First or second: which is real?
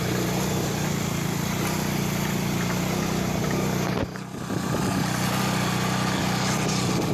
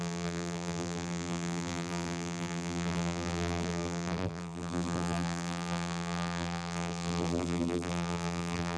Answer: first